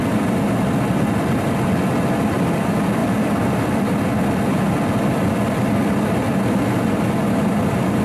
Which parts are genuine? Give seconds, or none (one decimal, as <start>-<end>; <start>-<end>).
0.0-8.0